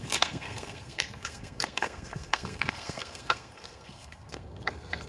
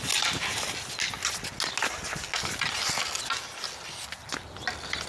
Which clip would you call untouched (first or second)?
second